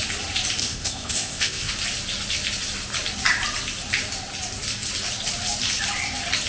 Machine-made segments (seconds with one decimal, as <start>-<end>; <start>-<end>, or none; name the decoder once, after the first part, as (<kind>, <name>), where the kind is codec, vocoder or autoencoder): 0.6-1.7 (codec, ZipCodec)